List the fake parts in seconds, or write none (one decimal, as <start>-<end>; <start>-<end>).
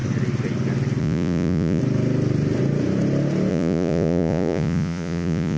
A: 1.0-1.8; 3.5-5.6